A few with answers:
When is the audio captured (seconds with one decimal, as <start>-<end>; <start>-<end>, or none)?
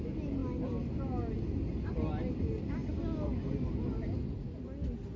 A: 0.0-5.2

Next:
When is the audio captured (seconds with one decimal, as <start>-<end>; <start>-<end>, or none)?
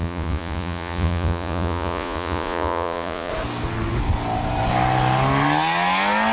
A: 3.3-6.3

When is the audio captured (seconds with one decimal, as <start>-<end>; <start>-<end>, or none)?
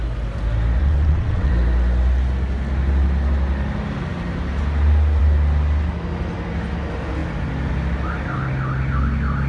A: 0.0-0.8; 1.5-9.5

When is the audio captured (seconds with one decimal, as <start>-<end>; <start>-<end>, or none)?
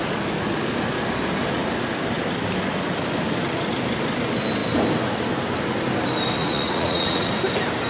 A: 0.0-6.4; 7.3-7.9